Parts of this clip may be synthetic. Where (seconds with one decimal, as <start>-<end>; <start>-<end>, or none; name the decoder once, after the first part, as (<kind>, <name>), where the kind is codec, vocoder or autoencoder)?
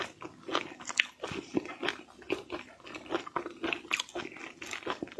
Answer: none